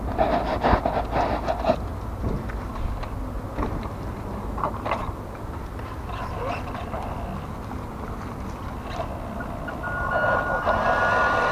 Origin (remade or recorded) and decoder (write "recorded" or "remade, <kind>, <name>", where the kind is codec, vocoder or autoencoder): recorded